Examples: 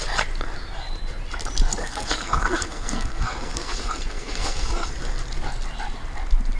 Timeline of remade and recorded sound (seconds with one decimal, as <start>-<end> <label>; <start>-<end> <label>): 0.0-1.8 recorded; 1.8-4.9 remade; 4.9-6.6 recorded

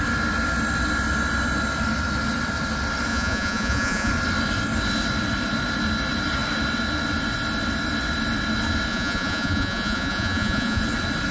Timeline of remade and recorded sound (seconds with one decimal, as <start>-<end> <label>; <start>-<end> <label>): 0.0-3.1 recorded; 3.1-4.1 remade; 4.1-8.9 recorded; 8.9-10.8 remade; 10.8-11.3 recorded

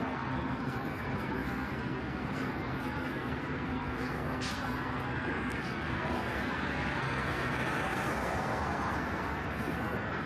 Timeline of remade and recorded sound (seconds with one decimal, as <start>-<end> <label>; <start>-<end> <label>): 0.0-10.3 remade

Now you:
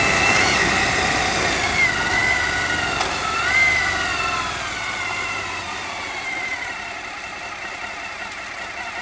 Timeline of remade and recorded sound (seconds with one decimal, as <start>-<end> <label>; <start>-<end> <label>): 0.0-9.0 recorded

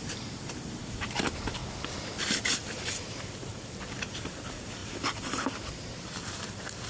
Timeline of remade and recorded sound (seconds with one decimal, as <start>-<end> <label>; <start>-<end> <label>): 0.0-1.6 remade; 1.6-2.5 recorded; 2.5-3.5 remade; 3.5-4.1 recorded; 4.1-6.9 remade